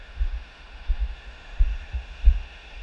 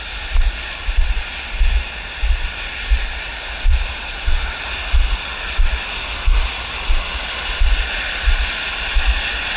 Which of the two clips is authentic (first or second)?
second